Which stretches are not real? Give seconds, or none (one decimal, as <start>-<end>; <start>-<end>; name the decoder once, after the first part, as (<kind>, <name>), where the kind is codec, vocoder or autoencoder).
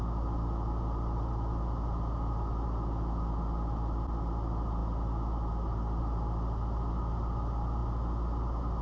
none